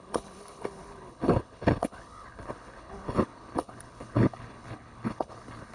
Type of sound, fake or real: fake